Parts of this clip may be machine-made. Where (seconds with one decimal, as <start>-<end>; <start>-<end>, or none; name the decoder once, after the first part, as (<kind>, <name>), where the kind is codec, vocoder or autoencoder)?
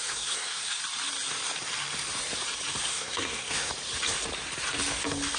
0.0-0.8 (codec, SNAC); 2.9-3.7